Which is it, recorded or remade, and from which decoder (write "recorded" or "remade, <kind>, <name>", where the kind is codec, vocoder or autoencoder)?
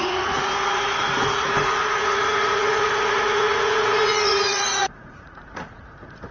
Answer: remade, vocoder, Vocos